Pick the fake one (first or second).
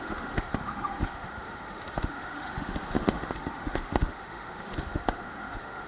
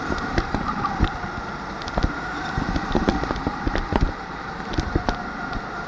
first